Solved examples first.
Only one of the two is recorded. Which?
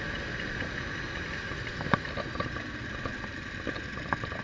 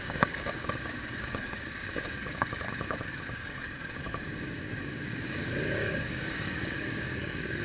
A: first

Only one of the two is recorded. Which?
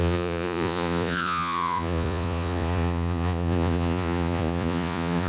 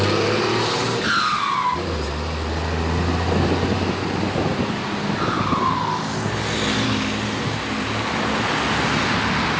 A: second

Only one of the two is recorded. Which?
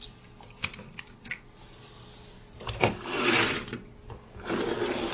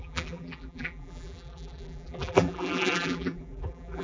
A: first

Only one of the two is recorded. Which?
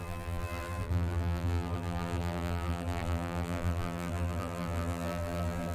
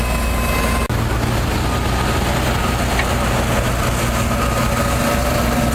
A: second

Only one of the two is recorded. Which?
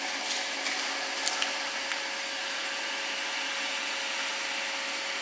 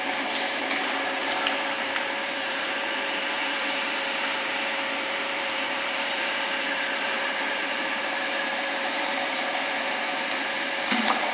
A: first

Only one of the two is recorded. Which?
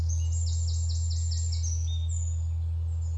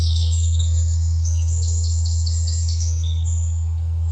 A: first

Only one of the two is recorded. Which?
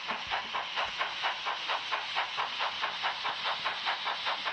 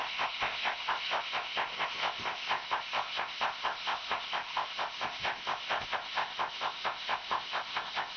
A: first